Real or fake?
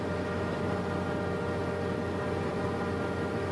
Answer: real